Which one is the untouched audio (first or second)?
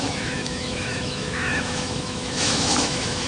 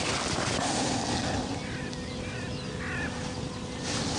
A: second